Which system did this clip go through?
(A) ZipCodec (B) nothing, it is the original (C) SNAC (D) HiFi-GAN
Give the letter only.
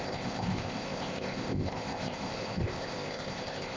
A